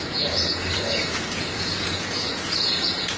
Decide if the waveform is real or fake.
fake